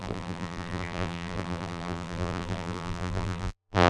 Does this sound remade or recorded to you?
remade